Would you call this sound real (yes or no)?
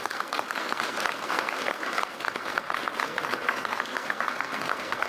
no